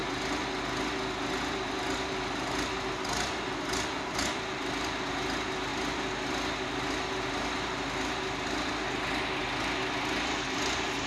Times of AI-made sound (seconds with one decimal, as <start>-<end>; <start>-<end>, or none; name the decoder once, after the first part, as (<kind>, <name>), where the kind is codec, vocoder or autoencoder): none

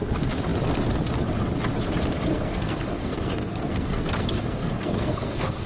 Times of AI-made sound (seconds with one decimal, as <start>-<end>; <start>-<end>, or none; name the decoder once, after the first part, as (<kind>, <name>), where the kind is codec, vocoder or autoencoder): 2.3-5.7 (codec, SNAC)

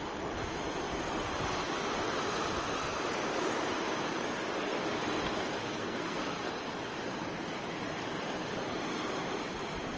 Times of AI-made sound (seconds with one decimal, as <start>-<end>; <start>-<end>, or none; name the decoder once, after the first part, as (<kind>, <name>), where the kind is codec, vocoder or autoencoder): 5.6-6.5 (codec, SNAC)

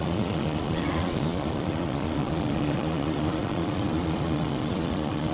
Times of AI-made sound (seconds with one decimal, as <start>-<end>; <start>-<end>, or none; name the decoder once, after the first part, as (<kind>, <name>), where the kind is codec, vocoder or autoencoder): 0.0-5.3 (vocoder, Vocos)